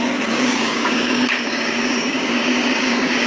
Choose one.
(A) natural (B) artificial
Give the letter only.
B